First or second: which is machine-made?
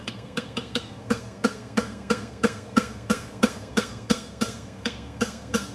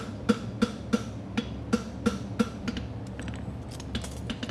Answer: first